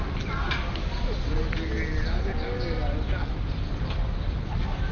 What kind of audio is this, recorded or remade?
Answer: recorded